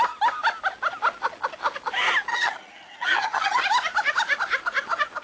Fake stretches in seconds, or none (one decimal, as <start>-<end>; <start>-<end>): 2.3-3.6